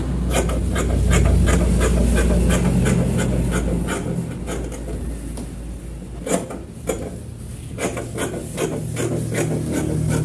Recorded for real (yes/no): yes